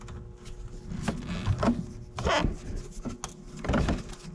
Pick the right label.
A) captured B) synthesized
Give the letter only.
A